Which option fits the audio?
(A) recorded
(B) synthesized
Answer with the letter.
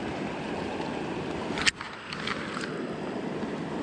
A